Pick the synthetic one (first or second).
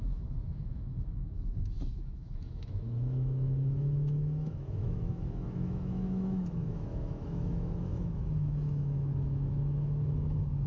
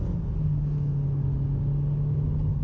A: first